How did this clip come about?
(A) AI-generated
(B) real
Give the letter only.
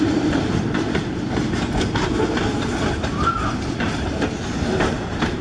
A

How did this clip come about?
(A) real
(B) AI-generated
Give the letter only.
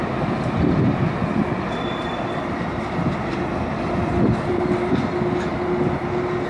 B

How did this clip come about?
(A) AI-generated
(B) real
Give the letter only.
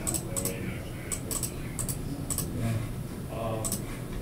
B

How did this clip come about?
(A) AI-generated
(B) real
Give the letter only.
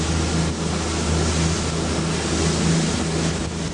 B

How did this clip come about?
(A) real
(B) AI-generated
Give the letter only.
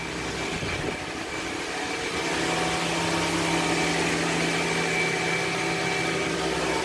A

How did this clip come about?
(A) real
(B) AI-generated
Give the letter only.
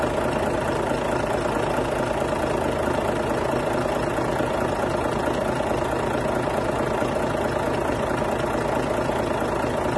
A